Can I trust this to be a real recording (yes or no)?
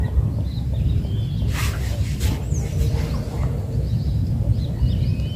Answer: yes